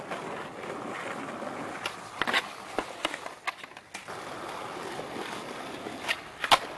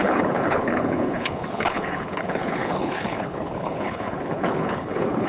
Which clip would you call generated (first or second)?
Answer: second